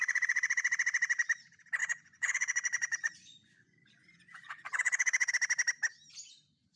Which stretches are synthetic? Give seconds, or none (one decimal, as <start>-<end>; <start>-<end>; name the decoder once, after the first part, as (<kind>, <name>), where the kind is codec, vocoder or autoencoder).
1.8-5.3 (vocoder, Vocos)